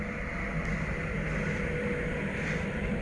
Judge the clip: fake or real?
real